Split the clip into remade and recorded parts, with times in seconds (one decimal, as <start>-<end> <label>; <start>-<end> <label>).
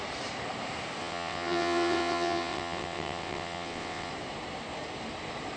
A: 0.0-1.0 recorded; 1.0-4.1 remade; 4.1-5.6 recorded